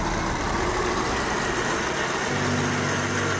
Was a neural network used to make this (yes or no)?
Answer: yes